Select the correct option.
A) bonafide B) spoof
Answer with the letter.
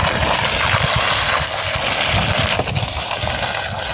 A